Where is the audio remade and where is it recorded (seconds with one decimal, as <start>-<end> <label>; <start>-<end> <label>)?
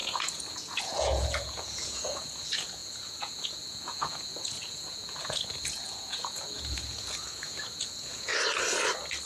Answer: 0.0-8.3 remade; 8.3-9.3 recorded